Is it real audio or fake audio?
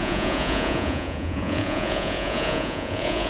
fake